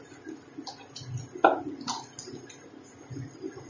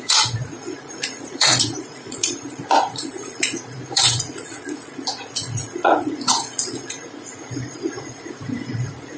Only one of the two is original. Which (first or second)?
first